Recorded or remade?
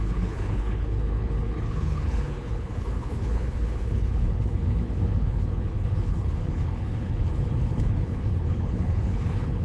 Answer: remade